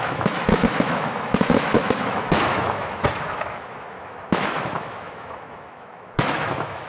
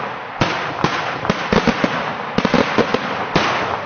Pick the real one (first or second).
second